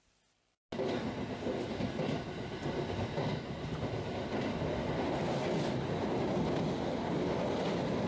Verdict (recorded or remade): recorded